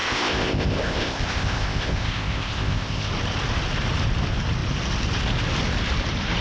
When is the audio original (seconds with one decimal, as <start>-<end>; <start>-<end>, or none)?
3.1-6.4